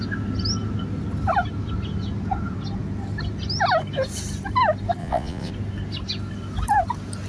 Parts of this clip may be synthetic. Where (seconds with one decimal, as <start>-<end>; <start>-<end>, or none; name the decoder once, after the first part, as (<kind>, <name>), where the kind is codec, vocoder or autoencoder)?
5.0-5.5 (vocoder, Vocos)